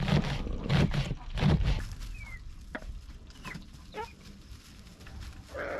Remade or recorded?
recorded